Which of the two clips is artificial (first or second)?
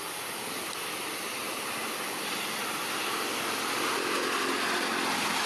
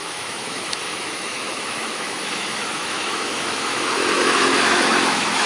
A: second